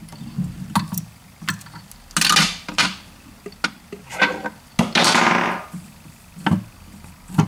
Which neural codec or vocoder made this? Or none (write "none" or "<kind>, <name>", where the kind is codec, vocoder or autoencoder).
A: none